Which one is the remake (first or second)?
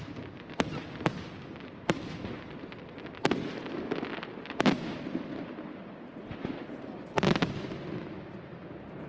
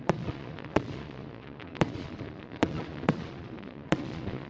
second